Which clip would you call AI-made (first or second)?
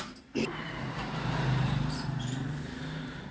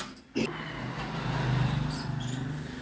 first